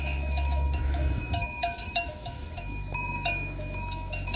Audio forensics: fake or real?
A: fake